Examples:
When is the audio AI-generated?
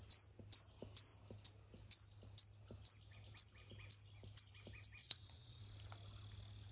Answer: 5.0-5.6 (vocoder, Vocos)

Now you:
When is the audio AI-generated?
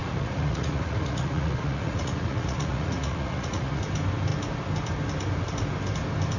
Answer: 0.0-3.8 (vocoder, Vocos)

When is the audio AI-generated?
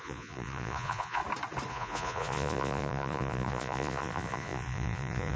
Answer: 0.0-1.2 (vocoder, Vocos); 1.7-5.4